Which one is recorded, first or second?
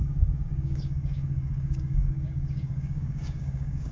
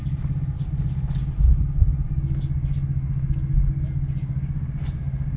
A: second